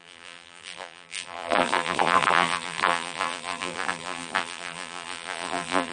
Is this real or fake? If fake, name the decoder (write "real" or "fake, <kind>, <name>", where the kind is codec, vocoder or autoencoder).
fake, vocoder, BigVGAN v2